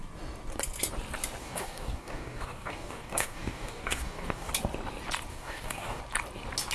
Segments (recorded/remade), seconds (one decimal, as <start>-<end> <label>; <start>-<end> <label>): 0.0-1.4 recorded; 1.4-4.5 remade; 4.5-5.3 recorded; 5.3-6.0 remade; 6.0-6.7 recorded